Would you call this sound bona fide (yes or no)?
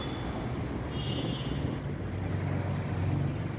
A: yes